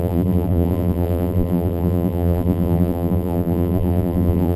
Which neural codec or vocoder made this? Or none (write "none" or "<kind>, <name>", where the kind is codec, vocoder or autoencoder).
vocoder, BigVGAN v2